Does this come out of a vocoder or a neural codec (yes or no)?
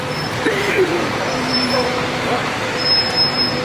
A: yes